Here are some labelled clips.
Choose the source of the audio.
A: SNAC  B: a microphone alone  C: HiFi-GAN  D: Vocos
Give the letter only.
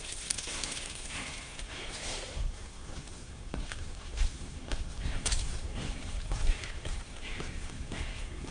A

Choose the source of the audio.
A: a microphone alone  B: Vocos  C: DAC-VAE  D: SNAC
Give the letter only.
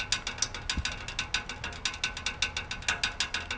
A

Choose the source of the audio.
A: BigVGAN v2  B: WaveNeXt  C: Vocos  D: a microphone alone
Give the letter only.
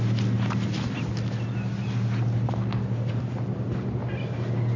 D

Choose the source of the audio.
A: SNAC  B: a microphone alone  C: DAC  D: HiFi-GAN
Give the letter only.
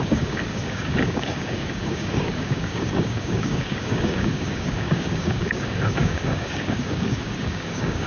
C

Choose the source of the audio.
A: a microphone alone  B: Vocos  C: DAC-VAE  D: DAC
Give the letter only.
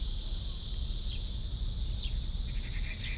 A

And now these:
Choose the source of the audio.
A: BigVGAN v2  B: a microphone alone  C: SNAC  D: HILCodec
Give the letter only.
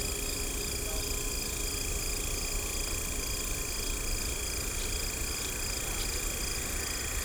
B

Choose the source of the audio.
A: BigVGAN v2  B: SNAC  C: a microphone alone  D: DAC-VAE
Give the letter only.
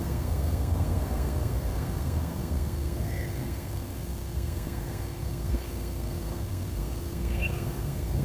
B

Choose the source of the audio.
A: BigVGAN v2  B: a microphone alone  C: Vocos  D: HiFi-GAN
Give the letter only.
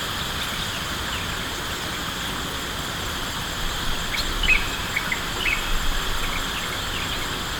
B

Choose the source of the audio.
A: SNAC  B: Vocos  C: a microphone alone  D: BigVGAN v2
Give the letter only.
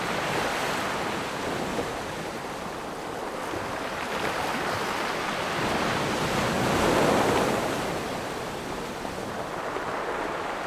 C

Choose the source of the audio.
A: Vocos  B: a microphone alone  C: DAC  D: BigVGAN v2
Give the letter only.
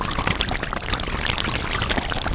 B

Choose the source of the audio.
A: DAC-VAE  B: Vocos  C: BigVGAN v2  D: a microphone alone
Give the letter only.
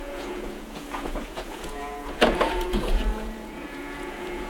B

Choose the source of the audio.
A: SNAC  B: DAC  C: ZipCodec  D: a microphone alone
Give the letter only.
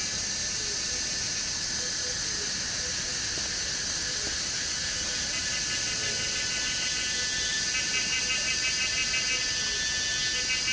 D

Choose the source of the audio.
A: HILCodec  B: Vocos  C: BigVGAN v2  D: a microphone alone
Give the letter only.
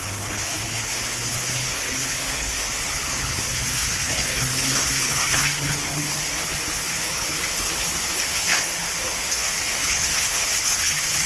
A